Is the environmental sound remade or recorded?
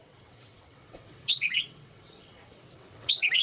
remade